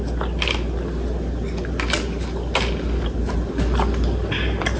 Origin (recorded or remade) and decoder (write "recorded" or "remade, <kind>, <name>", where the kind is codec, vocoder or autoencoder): recorded